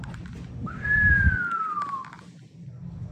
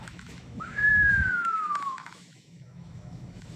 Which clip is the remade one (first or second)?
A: second